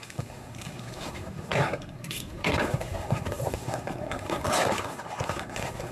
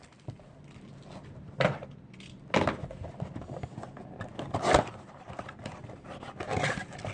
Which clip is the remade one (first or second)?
first